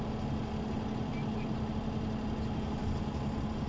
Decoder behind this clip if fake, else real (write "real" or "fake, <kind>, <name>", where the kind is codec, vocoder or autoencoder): real